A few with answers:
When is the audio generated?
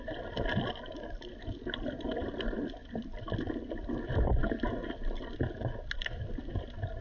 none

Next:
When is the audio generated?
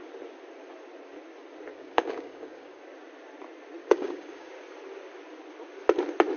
1.7-2.8; 3.8-4.5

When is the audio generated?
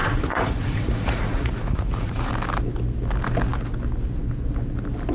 0.0-2.3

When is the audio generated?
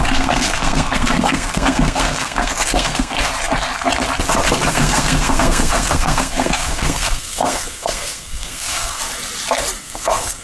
0.0-3.3; 4.7-9.0; 9.8-10.4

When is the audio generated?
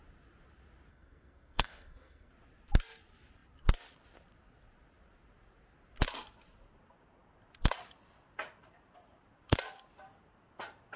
0.9-2.3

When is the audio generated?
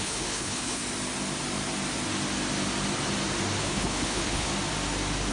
0.0-0.8; 3.6-4.5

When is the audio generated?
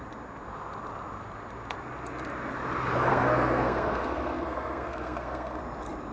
3.1-5.6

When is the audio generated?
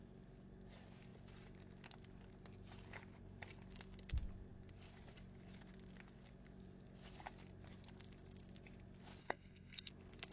9.2-9.9